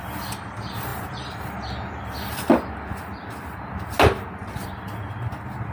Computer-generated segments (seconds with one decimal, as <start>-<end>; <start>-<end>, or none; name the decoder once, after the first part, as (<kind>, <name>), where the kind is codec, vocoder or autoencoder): none